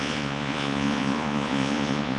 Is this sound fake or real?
fake